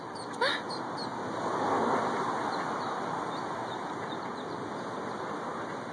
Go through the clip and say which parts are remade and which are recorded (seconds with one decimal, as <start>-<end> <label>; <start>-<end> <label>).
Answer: 0.0-5.9 recorded